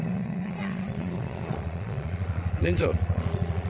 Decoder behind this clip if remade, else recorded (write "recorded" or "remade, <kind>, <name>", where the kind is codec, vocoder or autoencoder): remade, vocoder, Vocos